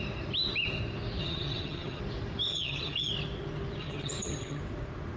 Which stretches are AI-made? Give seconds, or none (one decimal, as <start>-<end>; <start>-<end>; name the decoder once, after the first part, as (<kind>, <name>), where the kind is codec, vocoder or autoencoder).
1.2-2.0 (vocoder, HiFi-GAN); 2.5-3.1; 3.8-4.6